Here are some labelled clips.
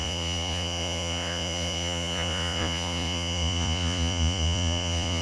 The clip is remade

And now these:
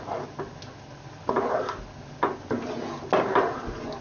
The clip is recorded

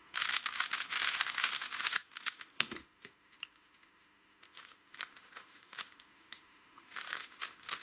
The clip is remade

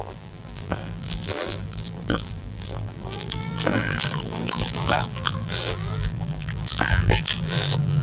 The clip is remade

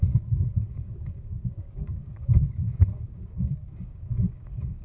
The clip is remade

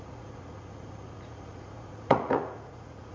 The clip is remade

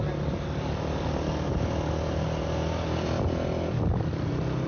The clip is recorded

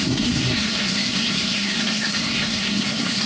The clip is remade